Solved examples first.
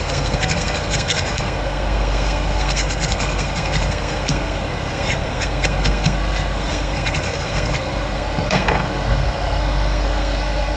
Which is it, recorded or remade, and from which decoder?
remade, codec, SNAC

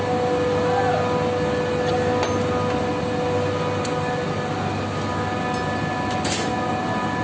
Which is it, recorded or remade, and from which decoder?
recorded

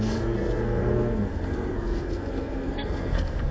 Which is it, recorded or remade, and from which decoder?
remade, codec, SNAC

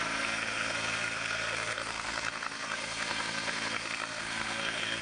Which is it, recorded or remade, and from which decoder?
remade, codec, SNAC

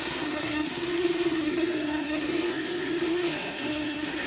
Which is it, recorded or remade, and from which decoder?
remade, codec, SNAC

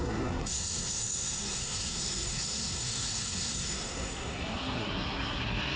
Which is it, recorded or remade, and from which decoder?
remade, codec, SNAC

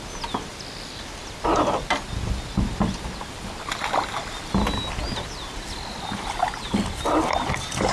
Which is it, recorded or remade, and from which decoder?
recorded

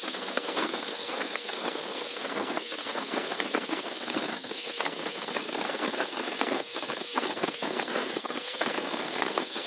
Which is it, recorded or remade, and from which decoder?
remade, codec, SNAC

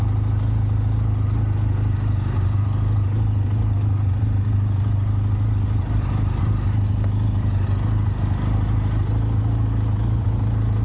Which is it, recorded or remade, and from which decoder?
recorded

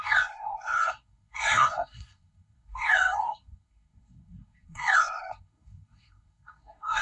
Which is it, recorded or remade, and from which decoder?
remade, codec, SNAC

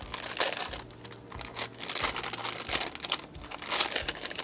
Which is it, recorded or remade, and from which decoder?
recorded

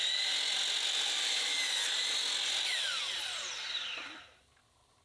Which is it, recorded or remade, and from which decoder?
recorded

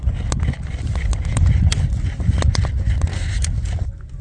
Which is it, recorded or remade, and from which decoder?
recorded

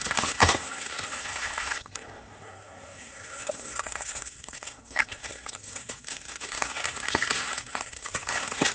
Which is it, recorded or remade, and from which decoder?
remade, codec, SNAC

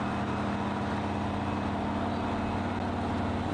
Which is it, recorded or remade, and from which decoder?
recorded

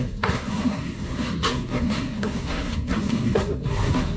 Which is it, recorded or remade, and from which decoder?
remade, codec, SNAC